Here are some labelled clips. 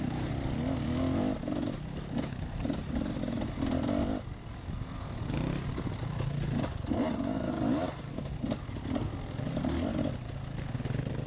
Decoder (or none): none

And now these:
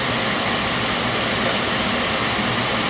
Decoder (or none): none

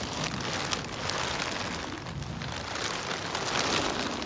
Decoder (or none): none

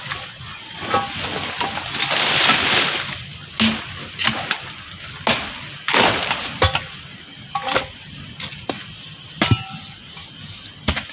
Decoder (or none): none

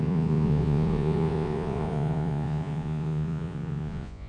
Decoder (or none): vocoder, Vocos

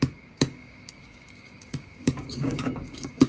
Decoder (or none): codec, DAC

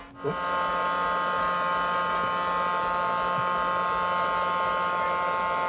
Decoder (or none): none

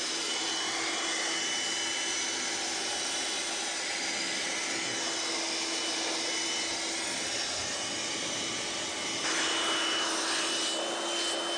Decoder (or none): none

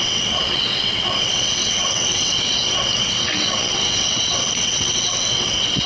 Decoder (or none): vocoder, WaveNeXt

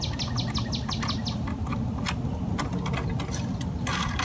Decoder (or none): none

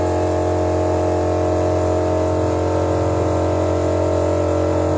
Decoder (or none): none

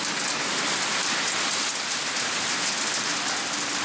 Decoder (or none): none